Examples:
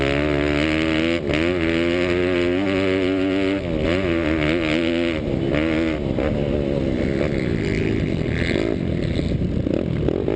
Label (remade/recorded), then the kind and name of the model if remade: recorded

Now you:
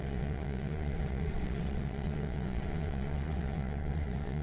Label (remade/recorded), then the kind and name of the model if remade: remade, vocoder, WaveNeXt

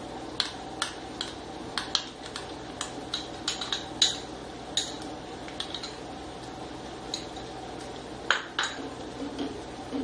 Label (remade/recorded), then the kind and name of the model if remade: recorded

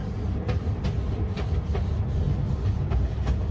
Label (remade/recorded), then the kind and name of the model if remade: recorded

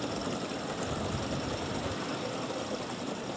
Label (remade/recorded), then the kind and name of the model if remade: recorded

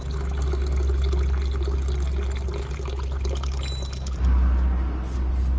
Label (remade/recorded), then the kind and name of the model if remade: recorded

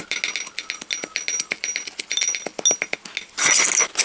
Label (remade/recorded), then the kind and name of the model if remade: recorded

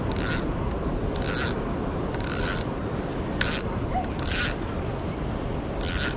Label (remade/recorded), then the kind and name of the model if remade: recorded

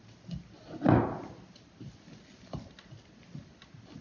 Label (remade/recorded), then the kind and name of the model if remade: recorded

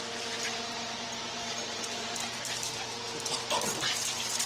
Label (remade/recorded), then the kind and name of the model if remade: remade, vocoder, BigVGAN v2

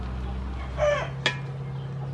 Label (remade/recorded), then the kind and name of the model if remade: recorded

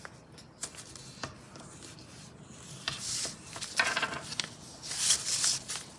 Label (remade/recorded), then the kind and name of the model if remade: recorded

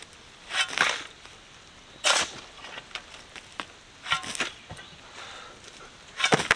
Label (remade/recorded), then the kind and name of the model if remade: recorded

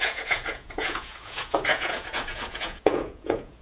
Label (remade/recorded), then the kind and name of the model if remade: remade, vocoder, Vocos